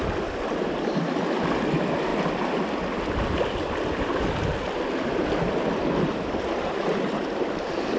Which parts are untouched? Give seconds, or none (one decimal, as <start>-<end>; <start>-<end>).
0.0-8.0